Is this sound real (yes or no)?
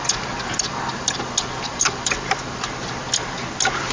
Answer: yes